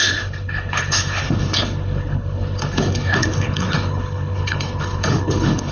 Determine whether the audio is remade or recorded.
remade